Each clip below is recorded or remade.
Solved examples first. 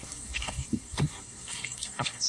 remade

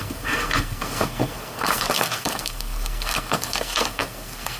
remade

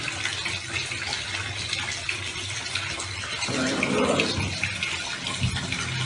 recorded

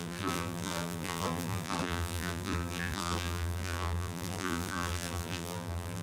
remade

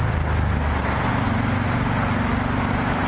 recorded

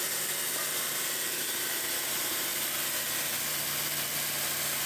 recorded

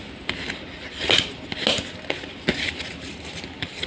recorded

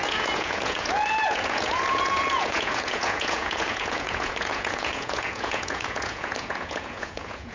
remade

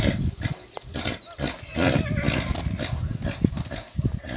recorded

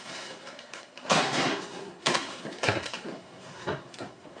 remade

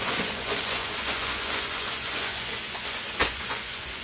remade